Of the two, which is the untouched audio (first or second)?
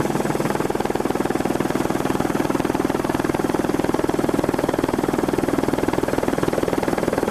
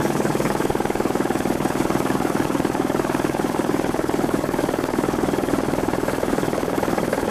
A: first